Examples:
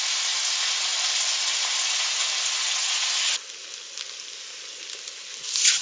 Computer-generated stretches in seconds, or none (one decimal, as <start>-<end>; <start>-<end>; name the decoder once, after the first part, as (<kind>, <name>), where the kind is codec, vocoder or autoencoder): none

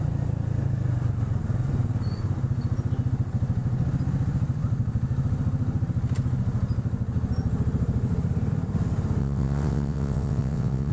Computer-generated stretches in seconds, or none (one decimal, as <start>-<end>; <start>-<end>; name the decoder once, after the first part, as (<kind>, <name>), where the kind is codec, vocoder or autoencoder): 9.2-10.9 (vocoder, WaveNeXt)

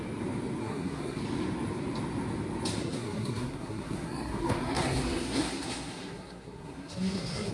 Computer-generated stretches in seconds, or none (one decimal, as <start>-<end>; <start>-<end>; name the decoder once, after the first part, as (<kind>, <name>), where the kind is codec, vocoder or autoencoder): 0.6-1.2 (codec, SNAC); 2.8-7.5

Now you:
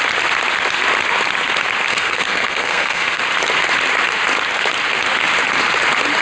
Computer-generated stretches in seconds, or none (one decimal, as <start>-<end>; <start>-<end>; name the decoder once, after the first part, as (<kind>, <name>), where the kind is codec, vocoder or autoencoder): 1.9-3.2 (codec, SNAC)

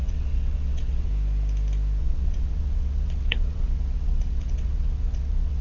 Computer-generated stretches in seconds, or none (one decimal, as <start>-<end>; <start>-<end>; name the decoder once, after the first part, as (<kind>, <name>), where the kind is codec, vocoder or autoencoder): 0.0-1.1 (vocoder, WaveNeXt); 2.0-5.6

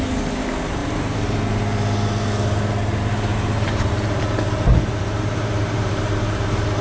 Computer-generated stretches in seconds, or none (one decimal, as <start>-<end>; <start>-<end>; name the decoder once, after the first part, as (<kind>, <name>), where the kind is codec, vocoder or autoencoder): 0.8-1.4 (vocoder, BigVGAN v2); 3.3-6.8